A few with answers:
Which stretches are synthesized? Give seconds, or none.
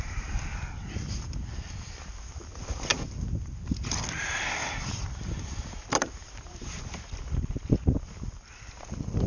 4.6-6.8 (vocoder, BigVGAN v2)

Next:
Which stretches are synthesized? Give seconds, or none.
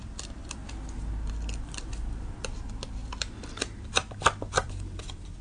0.0-0.6 (vocoder, BigVGAN v2); 1.1-3.0; 4.5-5.4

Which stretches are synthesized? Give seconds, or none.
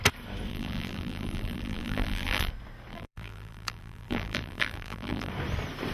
0.5-2.5 (vocoder, BigVGAN v2); 2.9-5.3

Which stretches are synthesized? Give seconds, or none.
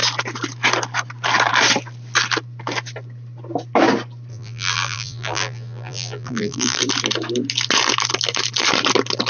4.3-6.8 (vocoder, BigVGAN v2)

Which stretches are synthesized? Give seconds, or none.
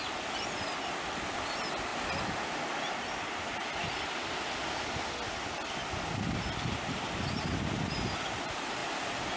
none